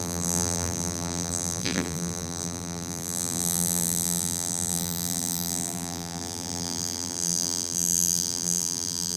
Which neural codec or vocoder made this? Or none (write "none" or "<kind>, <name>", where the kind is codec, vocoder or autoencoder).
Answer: vocoder, BigVGAN v2